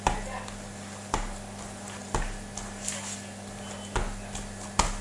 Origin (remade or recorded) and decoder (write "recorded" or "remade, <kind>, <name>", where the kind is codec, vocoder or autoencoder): recorded